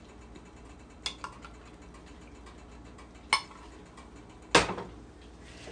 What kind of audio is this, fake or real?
real